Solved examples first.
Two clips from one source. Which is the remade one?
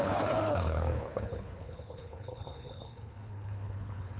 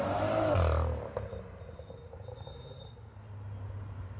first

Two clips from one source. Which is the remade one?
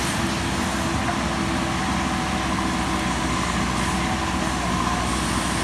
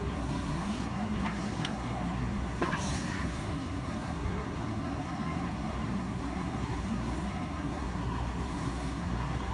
second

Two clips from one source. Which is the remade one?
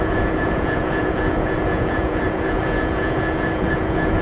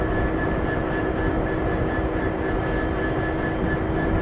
first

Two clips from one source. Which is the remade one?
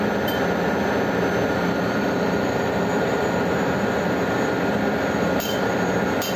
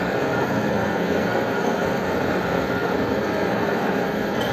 second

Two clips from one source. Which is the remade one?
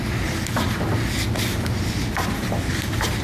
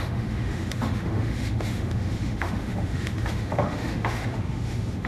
second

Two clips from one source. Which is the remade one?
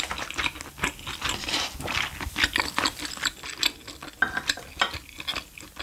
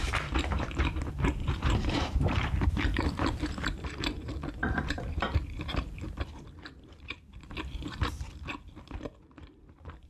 second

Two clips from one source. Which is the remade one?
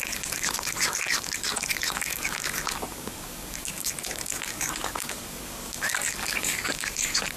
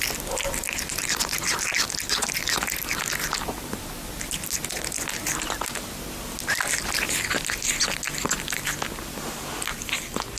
first